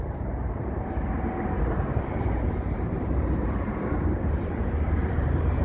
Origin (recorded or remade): remade